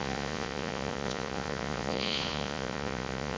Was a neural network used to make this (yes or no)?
yes